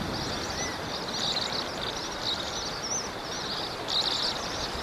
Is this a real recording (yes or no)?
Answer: yes